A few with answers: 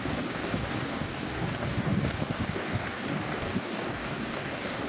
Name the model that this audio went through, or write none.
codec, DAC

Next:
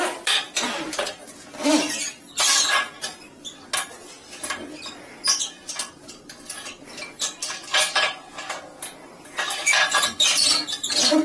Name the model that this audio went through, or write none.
none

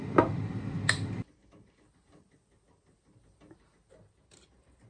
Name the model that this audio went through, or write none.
none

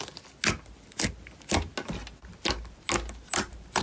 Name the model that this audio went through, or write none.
none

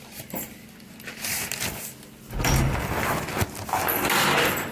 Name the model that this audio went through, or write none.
none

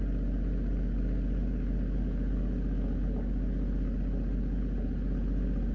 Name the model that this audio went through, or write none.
none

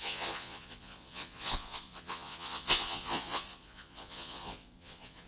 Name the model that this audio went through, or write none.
vocoder, Vocos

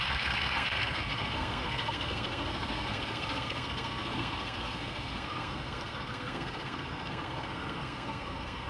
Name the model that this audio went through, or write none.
codec, SNAC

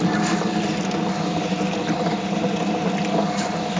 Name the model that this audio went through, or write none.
none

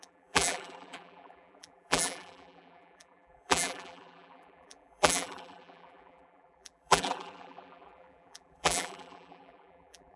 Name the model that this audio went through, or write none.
vocoder, BigVGAN v2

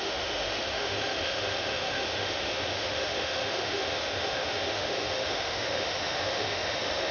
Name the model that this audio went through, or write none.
autoencoder, DAC-VAE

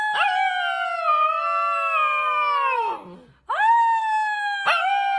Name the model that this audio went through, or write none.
none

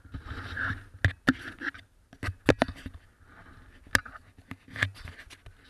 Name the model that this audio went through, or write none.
none